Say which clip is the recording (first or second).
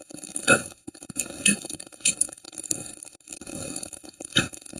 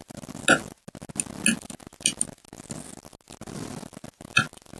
second